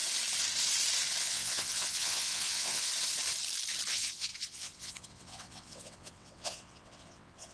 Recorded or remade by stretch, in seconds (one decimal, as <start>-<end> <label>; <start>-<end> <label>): 0.0-1.2 recorded; 1.2-2.9 remade; 2.9-3.9 recorded; 3.9-7.5 remade